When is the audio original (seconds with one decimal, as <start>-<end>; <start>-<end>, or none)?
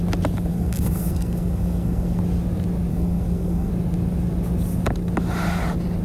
0.0-0.5; 2.2-2.9; 3.7-6.0